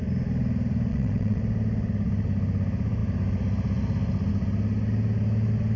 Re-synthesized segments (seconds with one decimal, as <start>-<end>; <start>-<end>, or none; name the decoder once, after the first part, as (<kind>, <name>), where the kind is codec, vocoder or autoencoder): 0.9-1.4 (vocoder, WaveNeXt)